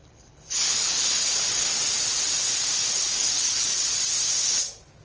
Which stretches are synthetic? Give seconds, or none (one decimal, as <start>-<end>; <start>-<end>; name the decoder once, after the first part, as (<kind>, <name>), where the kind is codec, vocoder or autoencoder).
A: 0.0-1.4 (codec, HILCodec); 2.9-3.9